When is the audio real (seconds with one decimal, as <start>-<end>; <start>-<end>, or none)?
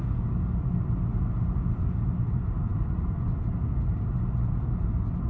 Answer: 0.0-2.7; 3.5-5.3